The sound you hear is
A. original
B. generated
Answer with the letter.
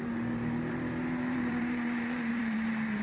B